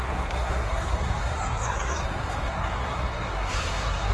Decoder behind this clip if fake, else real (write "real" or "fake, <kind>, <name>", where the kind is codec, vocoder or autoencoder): fake, codec, SNAC